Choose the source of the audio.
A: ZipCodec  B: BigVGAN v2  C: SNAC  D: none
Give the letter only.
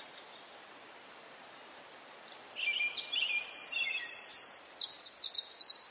D